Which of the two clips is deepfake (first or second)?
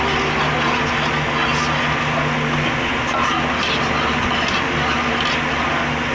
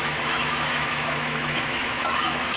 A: second